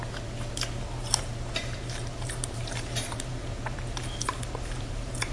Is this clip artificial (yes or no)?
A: yes